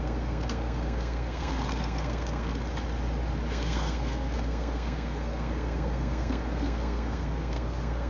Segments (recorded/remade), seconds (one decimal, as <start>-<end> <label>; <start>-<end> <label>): 0.0-2.5 remade; 2.5-3.5 recorded; 3.5-8.1 remade